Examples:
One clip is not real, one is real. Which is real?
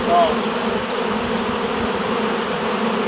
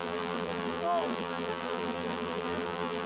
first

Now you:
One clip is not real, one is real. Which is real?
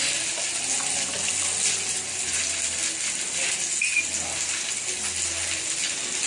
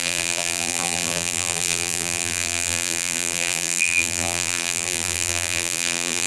first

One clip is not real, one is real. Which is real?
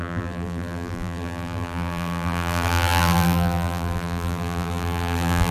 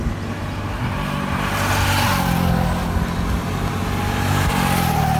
second